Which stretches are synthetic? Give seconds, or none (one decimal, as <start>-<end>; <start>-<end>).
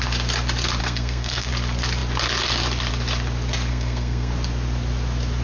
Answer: 0.8-1.5; 3.7-4.3